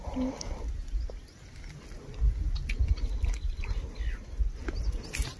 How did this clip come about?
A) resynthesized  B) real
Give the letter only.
B